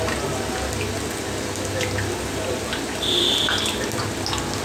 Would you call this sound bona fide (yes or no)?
yes